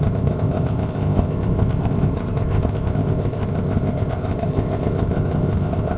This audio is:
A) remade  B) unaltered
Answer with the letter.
A